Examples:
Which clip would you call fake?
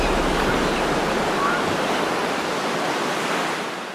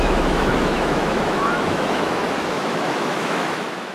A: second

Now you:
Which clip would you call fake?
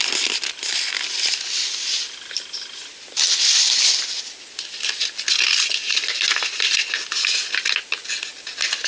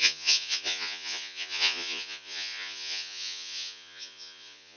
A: second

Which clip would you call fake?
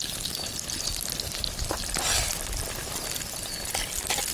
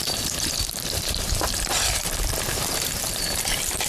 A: second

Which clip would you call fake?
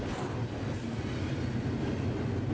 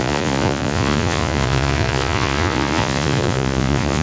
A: second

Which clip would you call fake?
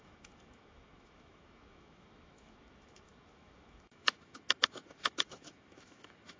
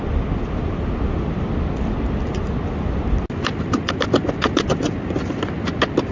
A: first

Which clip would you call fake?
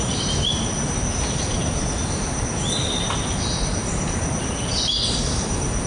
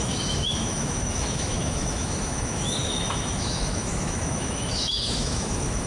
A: second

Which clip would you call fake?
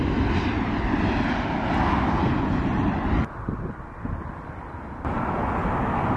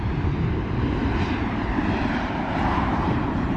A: second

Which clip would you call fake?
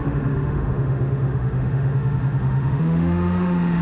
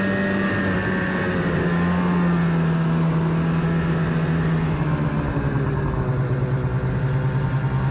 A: first